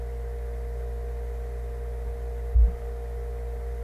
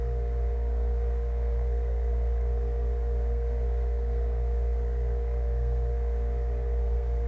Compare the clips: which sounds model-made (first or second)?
second